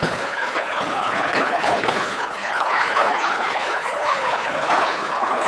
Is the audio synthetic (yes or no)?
yes